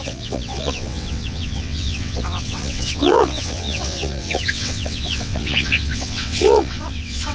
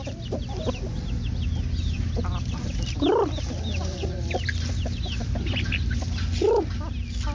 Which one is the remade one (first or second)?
first